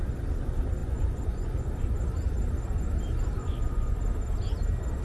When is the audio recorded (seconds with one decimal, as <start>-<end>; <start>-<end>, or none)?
0.0-0.8; 1.7-3.4; 4.0-5.0